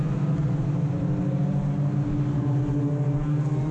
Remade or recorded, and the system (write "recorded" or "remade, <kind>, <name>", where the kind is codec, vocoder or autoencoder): recorded